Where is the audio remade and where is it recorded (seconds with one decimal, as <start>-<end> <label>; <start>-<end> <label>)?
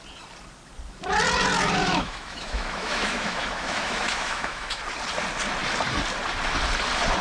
0.0-1.8 recorded; 1.8-4.8 remade; 4.8-7.2 recorded